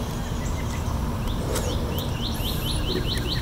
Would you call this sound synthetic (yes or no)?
no